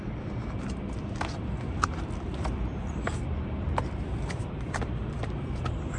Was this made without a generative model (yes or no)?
no